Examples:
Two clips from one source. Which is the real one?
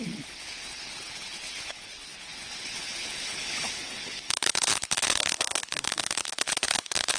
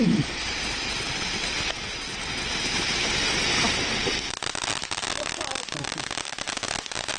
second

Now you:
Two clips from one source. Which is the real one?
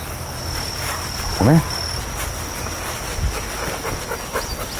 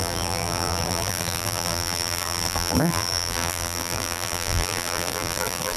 first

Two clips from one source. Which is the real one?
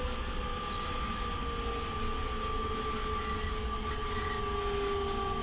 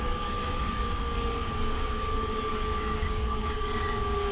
first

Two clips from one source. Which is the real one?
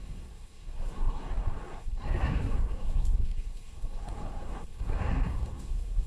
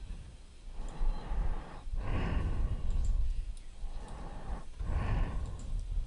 second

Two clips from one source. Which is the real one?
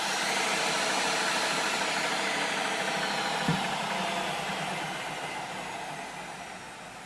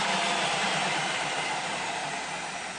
first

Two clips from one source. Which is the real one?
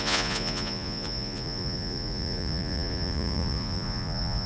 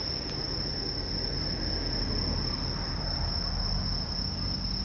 second